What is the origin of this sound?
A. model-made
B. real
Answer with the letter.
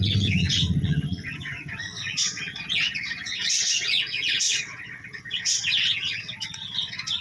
A